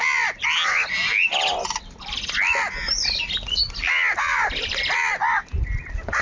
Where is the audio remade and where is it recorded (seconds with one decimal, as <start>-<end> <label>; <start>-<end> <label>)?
0.0-6.2 recorded